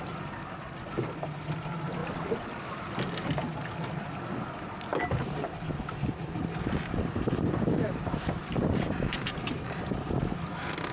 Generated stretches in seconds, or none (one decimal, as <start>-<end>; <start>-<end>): 4.9-9.8